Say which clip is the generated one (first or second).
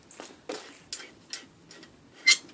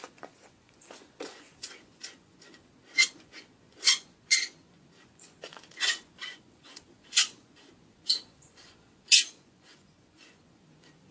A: second